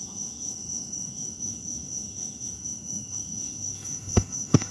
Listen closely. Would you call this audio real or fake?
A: fake